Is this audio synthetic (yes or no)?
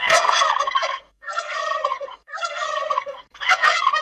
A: yes